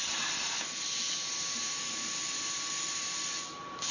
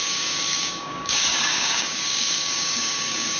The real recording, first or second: first